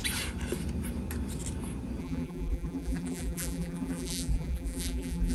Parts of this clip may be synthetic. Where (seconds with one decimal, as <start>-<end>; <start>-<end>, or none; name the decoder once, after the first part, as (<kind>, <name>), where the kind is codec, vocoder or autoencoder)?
2.0-5.3 (vocoder, BigVGAN v2)